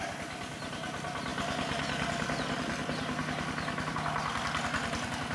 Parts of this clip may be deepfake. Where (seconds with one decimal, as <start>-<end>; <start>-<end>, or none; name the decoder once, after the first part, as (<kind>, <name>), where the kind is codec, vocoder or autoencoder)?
none